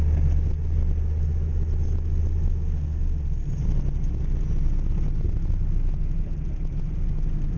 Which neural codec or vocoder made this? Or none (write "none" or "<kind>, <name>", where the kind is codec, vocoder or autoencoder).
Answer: none